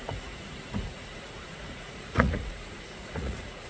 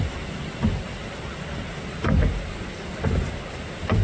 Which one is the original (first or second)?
second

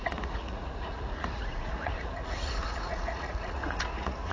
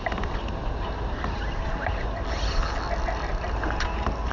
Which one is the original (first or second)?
second